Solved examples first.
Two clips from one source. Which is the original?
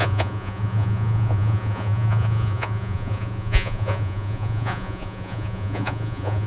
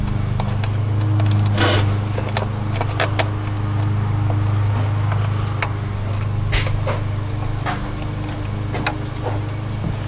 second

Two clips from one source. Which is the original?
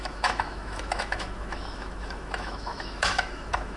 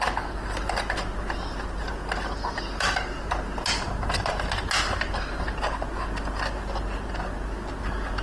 second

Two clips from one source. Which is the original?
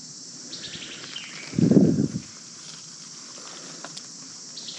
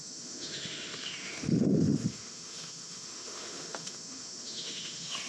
first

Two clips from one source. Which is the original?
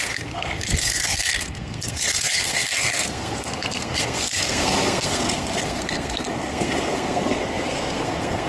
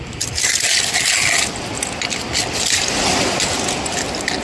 second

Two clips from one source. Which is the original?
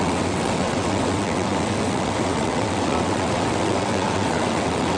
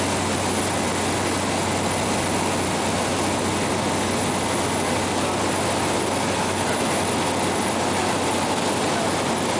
second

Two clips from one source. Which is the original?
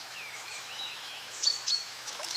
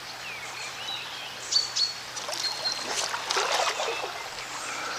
second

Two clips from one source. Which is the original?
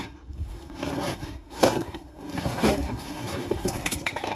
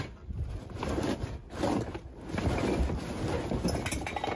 second